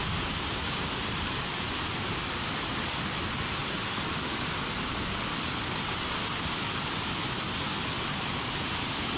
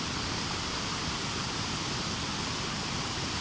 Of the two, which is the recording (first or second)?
first